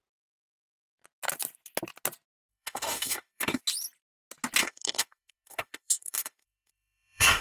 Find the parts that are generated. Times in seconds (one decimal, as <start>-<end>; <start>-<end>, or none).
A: 2.5-3.6; 4.6-7.4